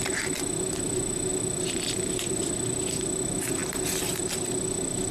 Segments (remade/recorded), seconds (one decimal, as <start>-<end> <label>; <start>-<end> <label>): 0.0-5.1 recorded